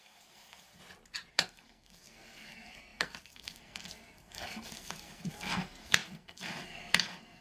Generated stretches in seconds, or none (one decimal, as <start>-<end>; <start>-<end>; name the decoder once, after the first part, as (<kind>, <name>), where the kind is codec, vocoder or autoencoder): 0.0-0.8 (codec, SNAC); 1.3-7.4

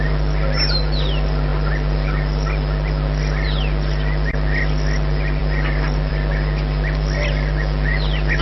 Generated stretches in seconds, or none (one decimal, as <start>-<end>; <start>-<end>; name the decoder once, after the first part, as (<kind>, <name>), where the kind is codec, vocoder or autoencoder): none